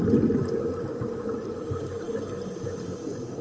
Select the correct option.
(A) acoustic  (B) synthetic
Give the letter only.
A